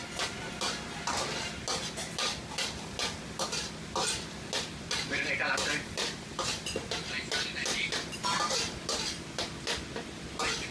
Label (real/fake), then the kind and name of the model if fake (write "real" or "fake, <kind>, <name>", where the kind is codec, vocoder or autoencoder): real